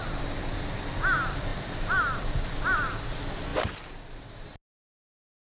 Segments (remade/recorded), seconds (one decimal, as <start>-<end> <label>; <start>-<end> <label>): 0.0-5.5 recorded